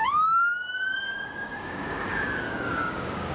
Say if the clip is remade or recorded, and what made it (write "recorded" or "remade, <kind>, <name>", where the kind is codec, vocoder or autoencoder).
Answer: remade, codec, DAC